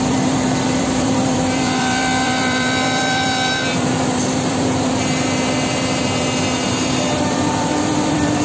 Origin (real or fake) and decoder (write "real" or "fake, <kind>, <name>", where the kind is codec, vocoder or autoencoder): fake, vocoder, BigVGAN v2